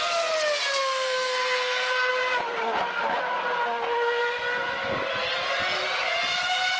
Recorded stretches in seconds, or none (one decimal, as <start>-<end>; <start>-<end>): 0.0-0.8; 2.1-6.8